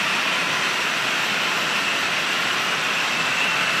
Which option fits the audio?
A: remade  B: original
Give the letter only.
B